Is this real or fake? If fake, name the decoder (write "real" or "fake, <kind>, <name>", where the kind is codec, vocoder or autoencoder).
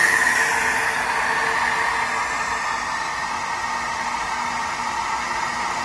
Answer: real